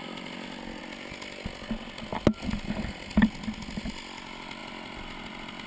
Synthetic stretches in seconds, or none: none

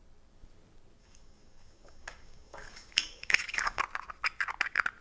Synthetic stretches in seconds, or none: 1.0-3.8

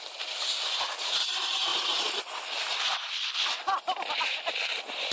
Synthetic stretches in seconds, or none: none

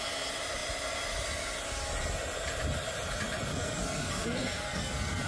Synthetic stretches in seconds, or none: 3.5-5.3

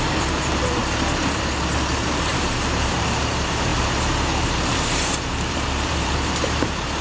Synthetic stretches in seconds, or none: 0.0-0.8; 2.3-7.0

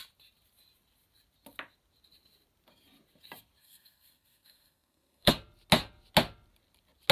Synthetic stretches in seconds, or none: 3.6-5.3

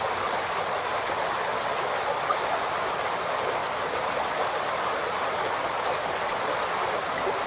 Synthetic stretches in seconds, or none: none

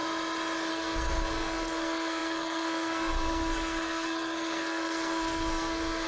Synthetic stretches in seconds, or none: 0.7-6.1